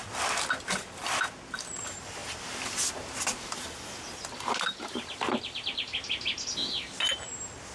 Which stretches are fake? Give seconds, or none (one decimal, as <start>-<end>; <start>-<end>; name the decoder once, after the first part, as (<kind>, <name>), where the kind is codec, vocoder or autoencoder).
none